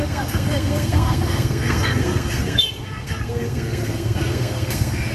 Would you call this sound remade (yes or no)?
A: yes